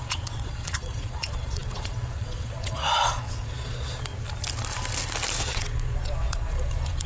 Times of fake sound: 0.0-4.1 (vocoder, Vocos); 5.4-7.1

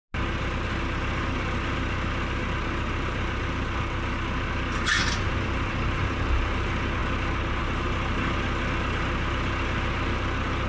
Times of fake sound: none

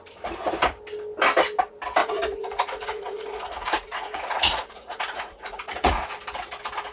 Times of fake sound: 2.0-6.1 (vocoder, Vocos)

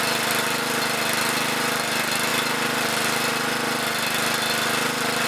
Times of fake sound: none

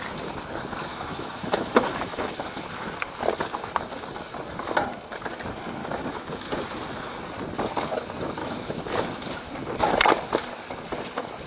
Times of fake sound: 0.9-2.6 (autoencoder, DAC-VAE); 5.8-6.5; 8.4-9.1

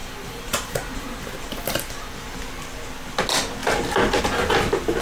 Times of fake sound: 0.0-2.4 (vocoder, BigVGAN v2)

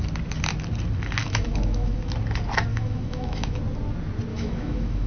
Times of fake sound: 1.2-2.1 (autoencoder, DAC-VAE); 2.7-3.6; 4.3-5.1

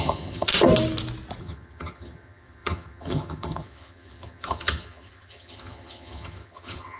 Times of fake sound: 0.0-0.5 (vocoder, HiFi-GAN); 1.4-7.0